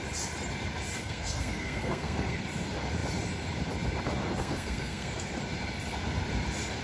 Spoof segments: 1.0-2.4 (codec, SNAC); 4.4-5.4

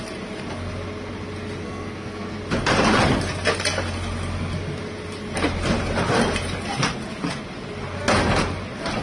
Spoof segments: 1.6-2.4 (codec, SNAC)

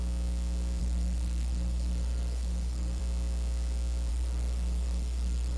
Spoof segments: 0.8-3.0 (codec, SNAC); 4.1-5.6

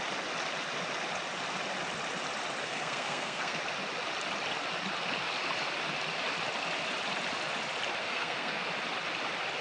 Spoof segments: 2.6-3.6 (codec, SNAC); 8.0-8.7

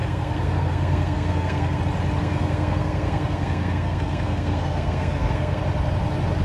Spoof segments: 0.0-1.8 (codec, SNAC); 2.2-5.6

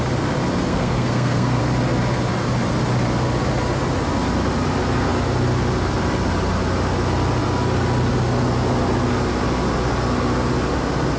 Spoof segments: 0.7-1.6 (codec, SNAC)

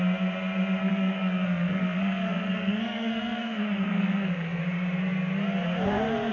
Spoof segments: 0.8-4.6 (codec, SNAC)